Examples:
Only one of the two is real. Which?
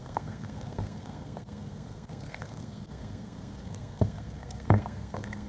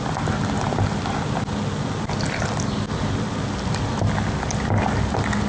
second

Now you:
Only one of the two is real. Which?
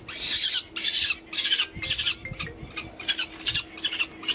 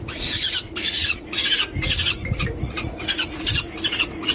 first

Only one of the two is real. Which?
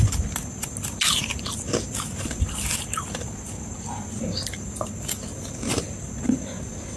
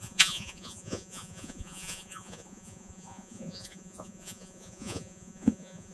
first